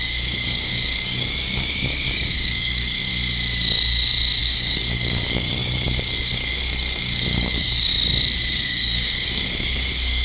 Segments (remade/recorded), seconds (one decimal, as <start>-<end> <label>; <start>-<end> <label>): 0.0-3.1 remade; 3.1-4.4 recorded; 4.4-7.9 remade; 7.9-8.5 recorded; 8.5-10.2 remade